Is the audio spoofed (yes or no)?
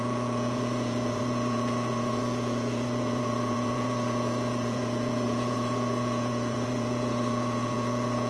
yes